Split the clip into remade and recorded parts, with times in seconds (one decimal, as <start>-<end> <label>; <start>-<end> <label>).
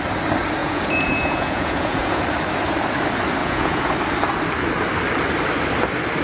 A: 0.0-0.6 recorded; 0.6-2.2 remade; 2.2-3.4 recorded; 3.4-3.9 remade; 3.9-6.2 recorded